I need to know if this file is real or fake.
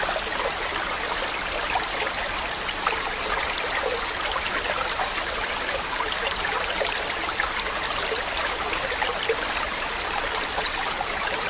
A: real